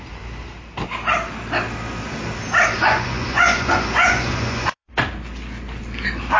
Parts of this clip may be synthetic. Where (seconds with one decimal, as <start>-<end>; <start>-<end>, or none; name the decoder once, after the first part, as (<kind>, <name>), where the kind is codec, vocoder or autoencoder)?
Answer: 2.8-4.9 (vocoder, Vocos)